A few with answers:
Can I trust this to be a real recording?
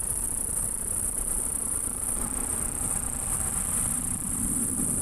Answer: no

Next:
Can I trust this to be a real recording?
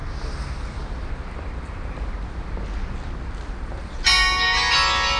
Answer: yes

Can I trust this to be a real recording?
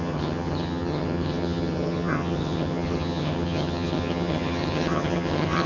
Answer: no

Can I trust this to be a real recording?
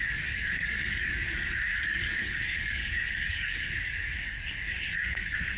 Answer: no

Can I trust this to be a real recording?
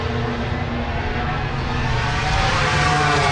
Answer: yes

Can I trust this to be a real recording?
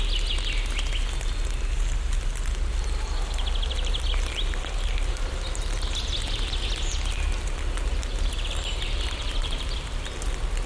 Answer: yes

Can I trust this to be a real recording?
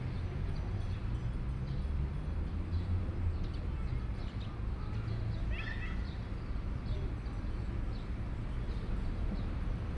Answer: yes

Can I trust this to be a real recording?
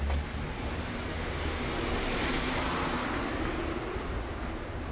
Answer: yes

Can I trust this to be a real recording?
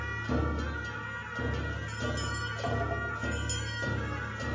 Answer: yes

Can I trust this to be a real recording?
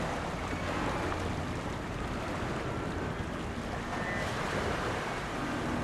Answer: yes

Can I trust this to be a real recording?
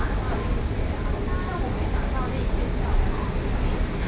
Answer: yes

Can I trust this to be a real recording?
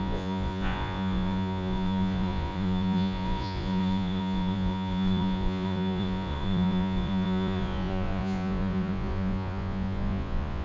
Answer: no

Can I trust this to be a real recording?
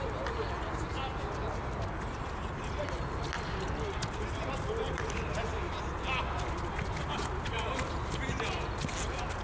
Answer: yes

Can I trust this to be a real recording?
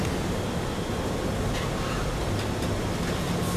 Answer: yes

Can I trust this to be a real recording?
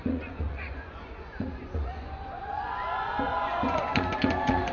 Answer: no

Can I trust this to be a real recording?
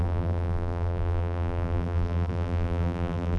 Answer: no